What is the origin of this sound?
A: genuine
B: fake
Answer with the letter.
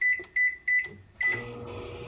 A